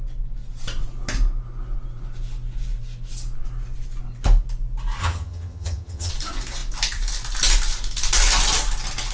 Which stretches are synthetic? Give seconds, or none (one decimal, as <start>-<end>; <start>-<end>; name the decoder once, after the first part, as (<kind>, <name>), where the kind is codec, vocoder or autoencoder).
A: 5.0-6.1 (vocoder, HiFi-GAN)